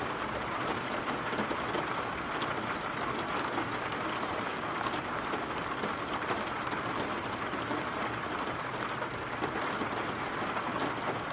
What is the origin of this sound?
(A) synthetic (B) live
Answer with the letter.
B